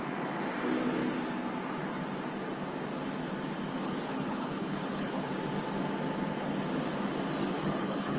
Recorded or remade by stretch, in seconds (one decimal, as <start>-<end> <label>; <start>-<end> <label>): 0.0-3.7 recorded; 3.7-5.3 remade; 5.3-7.5 recorded; 7.5-8.2 remade